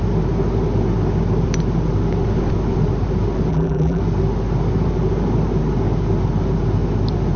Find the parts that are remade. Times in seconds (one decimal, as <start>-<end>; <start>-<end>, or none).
3.5-4.0